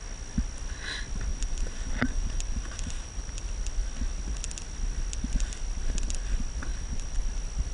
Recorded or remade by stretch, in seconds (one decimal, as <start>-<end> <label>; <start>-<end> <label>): 0.0-1.3 recorded; 1.3-3.4 remade; 3.4-6.7 recorded; 6.7-7.2 remade; 7.2-7.7 recorded